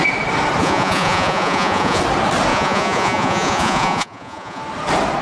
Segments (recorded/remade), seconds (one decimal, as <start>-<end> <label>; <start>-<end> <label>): 0.0-0.6 recorded; 0.6-2.0 remade; 2.0-2.5 recorded; 2.5-4.6 remade; 4.6-5.2 recorded